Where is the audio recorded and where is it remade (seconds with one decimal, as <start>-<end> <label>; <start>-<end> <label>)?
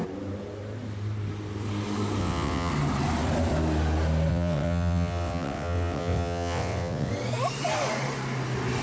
0.0-2.2 recorded; 2.2-2.7 remade; 2.7-4.3 recorded; 4.3-7.1 remade; 7.1-8.8 recorded